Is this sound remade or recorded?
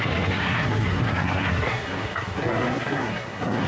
remade